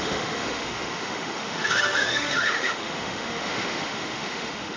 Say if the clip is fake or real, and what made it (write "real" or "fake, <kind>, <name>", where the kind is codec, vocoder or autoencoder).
fake, autoencoder, DAC-VAE